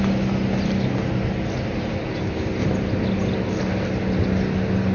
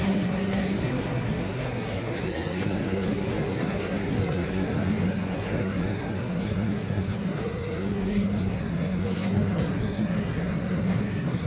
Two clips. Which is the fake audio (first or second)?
second